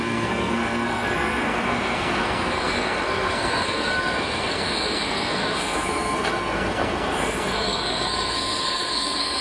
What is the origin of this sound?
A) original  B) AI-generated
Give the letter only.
B